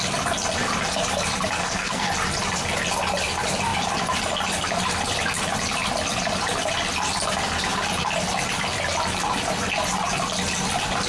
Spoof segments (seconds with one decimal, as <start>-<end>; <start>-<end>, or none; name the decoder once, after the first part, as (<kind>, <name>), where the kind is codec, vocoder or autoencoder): 1.6-2.1 (codec, SNAC)